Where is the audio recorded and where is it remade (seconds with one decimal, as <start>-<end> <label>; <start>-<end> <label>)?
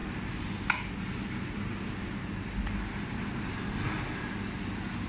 0.0-5.1 recorded